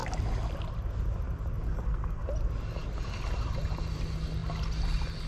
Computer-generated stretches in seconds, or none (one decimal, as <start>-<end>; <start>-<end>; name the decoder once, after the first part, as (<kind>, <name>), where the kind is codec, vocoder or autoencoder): 1.7-2.3 (codec, SNAC)

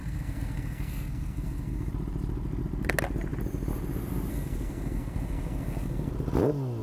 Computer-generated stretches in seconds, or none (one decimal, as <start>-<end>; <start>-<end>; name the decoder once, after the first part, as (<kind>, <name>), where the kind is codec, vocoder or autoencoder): 0.0-1.9 (codec, SNAC); 4.3-6.1

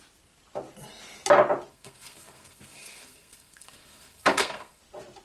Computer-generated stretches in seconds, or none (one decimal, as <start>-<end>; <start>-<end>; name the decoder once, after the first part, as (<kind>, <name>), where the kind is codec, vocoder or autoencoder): 1.7-4.8 (codec, SNAC)

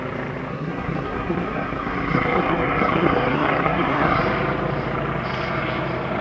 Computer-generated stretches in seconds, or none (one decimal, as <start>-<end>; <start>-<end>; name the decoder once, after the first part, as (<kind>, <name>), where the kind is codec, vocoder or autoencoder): 0.5-4.2 (codec, SNAC)

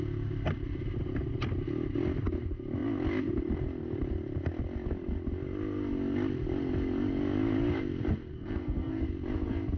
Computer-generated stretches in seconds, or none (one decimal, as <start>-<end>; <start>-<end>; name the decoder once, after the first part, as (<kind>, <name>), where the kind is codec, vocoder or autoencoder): 8.3-9.0 (codec, SNAC)

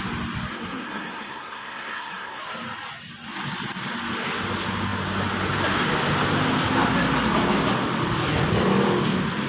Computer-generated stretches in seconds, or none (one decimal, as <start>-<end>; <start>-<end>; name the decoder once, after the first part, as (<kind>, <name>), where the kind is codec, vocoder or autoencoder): 0.5-2.4 (codec, SNAC)

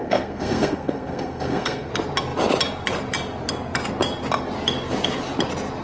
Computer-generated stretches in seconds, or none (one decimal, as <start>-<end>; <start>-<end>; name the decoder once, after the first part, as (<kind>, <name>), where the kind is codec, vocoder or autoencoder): 0.0-1.9 (codec, SNAC)